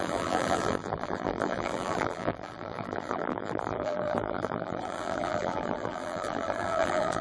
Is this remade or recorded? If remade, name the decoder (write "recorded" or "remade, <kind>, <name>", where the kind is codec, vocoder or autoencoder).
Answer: remade, vocoder, BigVGAN v2